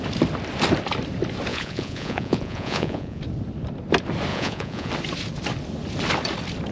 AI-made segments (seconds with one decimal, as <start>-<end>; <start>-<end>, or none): 1.5-3.2; 4.3-4.9